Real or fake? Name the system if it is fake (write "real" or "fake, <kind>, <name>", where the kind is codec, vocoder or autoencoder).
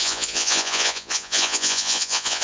fake, vocoder, Vocos